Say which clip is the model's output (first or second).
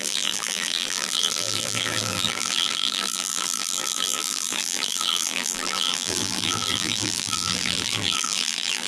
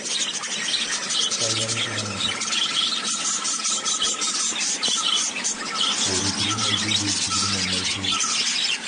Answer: first